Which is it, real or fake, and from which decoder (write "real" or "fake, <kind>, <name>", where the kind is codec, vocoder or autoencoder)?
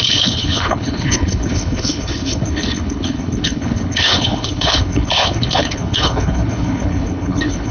fake, codec, HILCodec